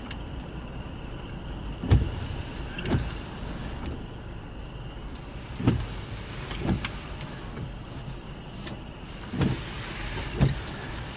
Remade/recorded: remade